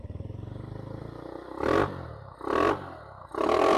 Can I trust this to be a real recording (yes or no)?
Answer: no